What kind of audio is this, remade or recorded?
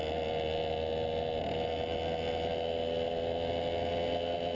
recorded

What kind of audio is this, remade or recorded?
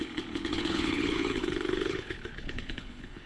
remade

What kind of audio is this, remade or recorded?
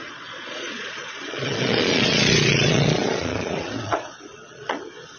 remade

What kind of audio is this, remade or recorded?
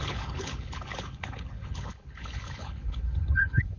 remade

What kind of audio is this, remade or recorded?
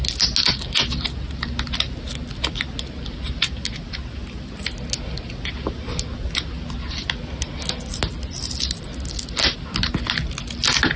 recorded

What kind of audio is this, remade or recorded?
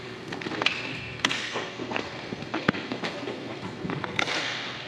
remade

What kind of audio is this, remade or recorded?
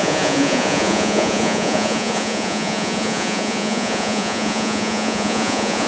remade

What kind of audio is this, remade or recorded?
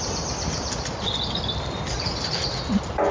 recorded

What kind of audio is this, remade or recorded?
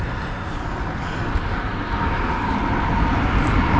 recorded